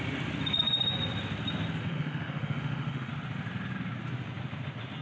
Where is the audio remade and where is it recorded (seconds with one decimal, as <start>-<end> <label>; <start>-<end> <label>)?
0.0-1.8 recorded; 1.8-3.1 remade; 3.1-5.0 recorded